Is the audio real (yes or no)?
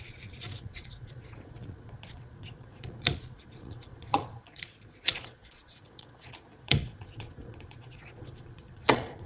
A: no